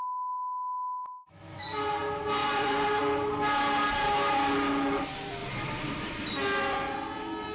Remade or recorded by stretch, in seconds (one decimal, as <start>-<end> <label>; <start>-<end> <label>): 0.0-2.4 recorded; 2.4-3.0 remade; 3.0-5.4 recorded; 5.4-6.3 remade; 6.3-7.5 recorded